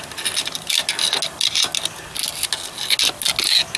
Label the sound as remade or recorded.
recorded